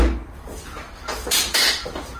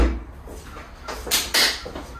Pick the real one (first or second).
second